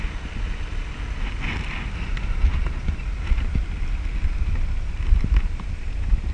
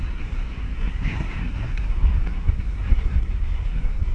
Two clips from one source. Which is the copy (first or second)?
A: second